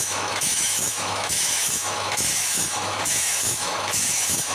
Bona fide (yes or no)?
no